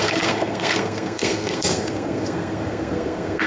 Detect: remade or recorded remade